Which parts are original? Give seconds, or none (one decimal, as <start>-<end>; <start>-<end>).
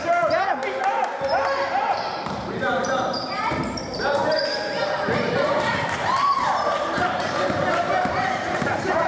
4.2-4.8